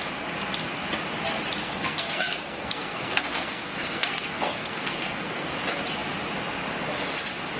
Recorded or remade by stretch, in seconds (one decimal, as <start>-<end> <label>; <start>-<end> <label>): 0.0-1.6 recorded; 1.6-5.5 remade; 5.5-7.6 recorded